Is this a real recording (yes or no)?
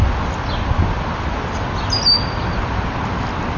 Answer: yes